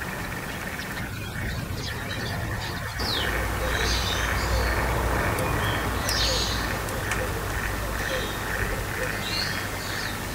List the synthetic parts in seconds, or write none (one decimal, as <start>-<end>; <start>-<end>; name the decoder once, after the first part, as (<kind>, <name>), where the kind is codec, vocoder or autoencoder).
none